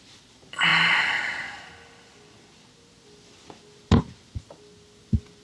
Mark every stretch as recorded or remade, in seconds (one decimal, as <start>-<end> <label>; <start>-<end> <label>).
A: 0.0-5.4 recorded